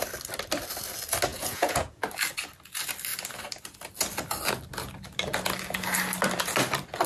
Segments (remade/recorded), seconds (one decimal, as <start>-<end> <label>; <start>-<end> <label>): 0.0-1.3 recorded; 1.3-2.0 remade; 2.0-7.1 recorded